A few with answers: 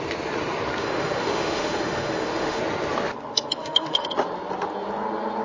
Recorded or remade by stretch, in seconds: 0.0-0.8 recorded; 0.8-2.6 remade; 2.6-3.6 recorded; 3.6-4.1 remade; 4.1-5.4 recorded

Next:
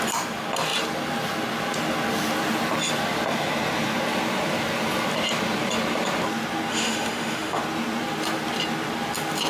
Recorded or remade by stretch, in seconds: 0.0-6.7 recorded; 6.7-7.6 remade; 7.6-9.5 recorded

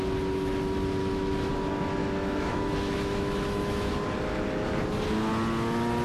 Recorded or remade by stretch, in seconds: 0.0-1.0 recorded; 1.0-1.5 remade; 1.5-2.0 recorded; 2.0-3.9 remade; 3.9-6.0 recorded

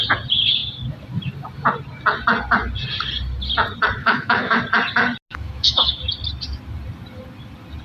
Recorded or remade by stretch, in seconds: 0.0-4.0 recorded; 4.0-4.6 remade; 4.6-5.3 recorded; 5.3-6.0 remade; 6.0-7.8 recorded